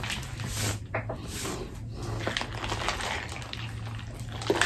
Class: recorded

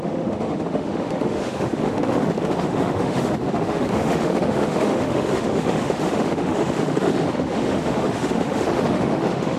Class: remade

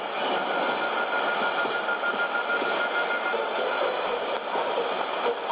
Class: recorded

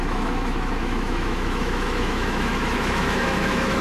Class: remade